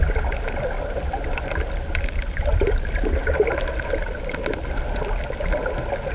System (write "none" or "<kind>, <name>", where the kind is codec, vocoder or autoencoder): none